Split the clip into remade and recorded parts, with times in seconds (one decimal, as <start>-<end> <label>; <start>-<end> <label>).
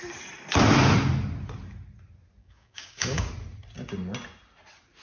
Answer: 0.0-2.4 recorded; 2.4-3.3 remade; 3.3-5.0 recorded